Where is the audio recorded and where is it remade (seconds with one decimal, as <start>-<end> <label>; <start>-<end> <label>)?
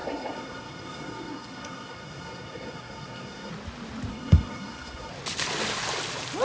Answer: 0.0-3.5 remade; 3.5-4.1 recorded; 4.1-5.1 remade; 5.1-6.4 recorded